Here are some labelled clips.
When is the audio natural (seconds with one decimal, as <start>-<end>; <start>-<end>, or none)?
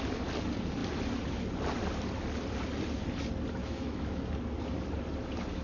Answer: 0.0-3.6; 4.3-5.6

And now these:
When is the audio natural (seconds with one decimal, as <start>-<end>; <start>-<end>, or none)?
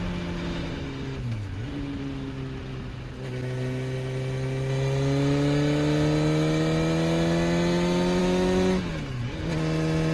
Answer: 0.0-8.2; 8.9-10.1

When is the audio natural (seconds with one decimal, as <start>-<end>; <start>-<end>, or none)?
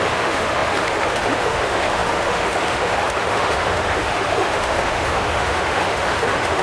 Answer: none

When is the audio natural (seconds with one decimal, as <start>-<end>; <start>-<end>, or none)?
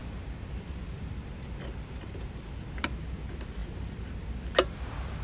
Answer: 0.0-5.2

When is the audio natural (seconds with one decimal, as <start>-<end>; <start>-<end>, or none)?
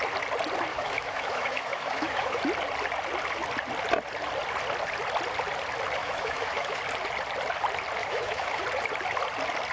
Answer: 0.0-0.7; 2.4-6.0; 6.8-8.0; 8.6-9.7